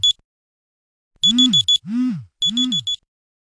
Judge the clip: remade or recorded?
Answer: recorded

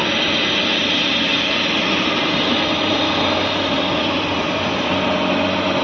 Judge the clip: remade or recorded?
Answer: remade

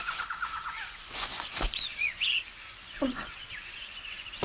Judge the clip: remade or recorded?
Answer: remade